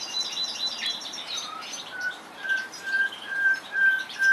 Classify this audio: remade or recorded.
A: remade